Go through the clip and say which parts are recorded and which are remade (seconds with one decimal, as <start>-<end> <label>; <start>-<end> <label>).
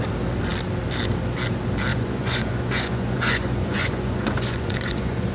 0.0-1.9 recorded; 1.9-5.3 remade